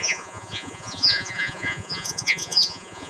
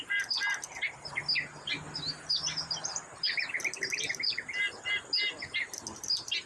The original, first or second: second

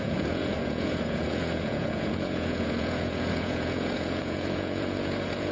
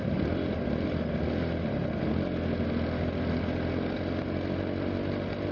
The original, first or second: second